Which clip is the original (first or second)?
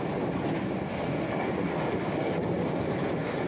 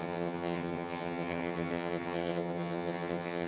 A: first